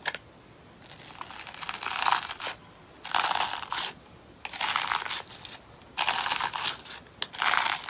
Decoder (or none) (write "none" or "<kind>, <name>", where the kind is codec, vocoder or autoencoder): none